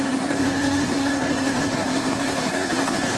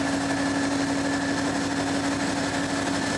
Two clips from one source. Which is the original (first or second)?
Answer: second